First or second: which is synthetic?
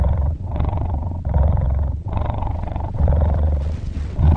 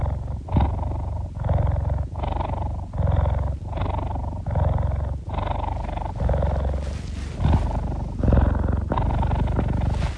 first